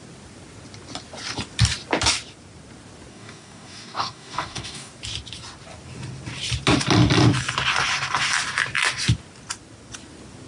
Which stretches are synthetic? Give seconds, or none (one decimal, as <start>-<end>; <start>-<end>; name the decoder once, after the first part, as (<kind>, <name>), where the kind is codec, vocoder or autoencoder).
3.1-4.9 (codec, DAC)